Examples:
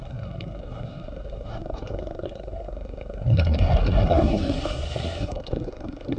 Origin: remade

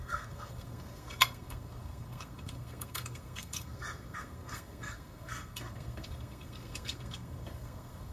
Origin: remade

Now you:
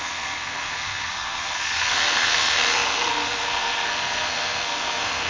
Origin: remade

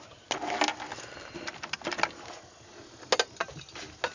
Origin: recorded